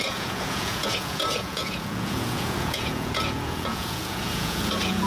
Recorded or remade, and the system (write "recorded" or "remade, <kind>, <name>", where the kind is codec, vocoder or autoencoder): remade, vocoder, Vocos